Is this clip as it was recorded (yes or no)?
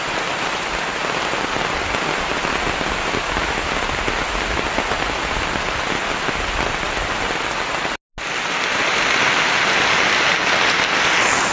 yes